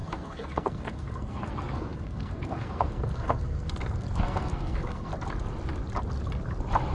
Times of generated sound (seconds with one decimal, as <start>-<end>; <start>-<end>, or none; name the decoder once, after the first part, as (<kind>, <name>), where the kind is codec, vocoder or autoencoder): 0.0-5.1 (codec, SNAC)